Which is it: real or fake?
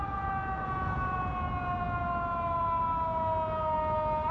real